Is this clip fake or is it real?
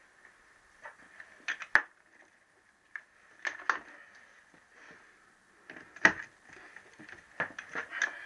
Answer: real